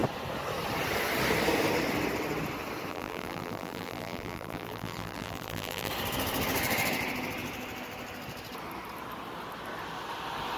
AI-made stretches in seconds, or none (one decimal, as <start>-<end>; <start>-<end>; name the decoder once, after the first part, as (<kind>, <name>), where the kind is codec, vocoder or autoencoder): 2.9-5.9 (vocoder, BigVGAN v2)